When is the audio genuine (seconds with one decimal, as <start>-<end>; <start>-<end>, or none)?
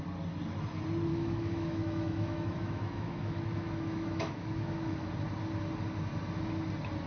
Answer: 0.0-1.1; 5.1-7.1